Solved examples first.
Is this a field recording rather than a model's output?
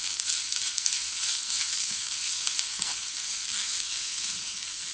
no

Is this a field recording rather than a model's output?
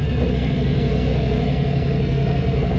no